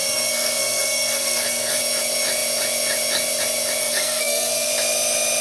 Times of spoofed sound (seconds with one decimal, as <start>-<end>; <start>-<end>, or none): 0.0-1.8; 3.8-4.7